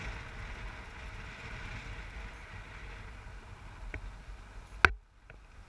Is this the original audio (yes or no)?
yes